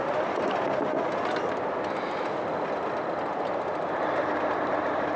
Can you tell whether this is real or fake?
real